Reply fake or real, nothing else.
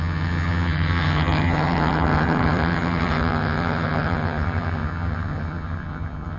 fake